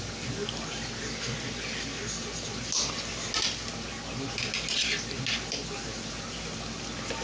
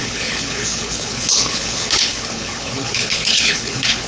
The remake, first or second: second